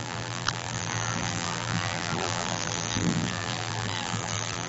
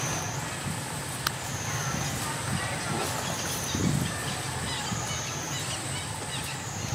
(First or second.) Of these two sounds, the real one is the second